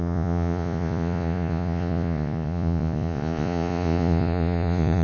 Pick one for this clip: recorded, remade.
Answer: remade